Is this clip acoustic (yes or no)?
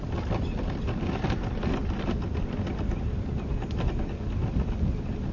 yes